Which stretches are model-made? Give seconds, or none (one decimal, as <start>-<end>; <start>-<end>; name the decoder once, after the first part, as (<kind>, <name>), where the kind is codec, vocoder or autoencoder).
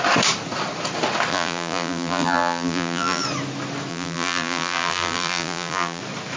1.3-3.2 (vocoder, BigVGAN v2); 3.9-6.0